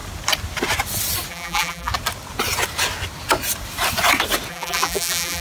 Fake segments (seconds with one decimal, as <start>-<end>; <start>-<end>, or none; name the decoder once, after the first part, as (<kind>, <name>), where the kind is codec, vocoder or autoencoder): 1.3-1.9 (vocoder, BigVGAN v2); 4.5-5.4